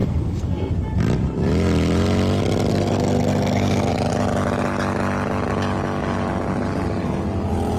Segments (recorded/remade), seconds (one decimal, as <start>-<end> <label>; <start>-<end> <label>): 0.0-0.7 remade; 0.7-2.7 recorded; 2.7-3.9 remade; 3.9-7.8 recorded